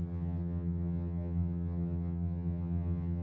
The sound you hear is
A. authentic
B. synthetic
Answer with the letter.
B